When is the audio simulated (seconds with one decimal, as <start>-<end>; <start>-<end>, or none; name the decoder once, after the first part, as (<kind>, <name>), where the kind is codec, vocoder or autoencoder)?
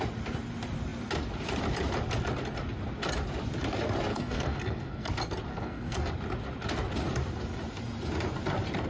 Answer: 4.1-5.1 (codec, SNAC); 5.5-6.1